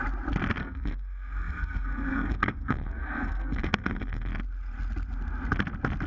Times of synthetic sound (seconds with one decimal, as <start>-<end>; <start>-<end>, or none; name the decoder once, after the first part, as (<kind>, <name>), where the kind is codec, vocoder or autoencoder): 0.6-4.3 (codec, SNAC)